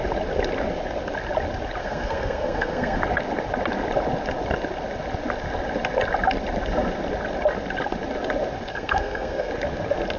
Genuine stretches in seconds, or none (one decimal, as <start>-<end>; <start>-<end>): 0.0-1.8; 3.0-8.7; 9.5-10.2